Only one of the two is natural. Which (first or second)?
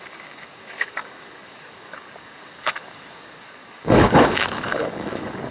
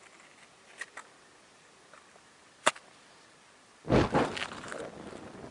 second